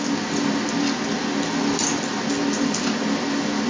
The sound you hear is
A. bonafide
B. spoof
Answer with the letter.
A